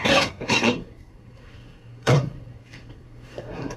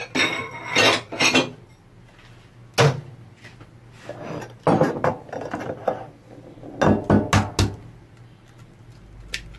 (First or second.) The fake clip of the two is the first